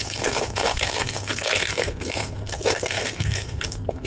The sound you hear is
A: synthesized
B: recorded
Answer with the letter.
A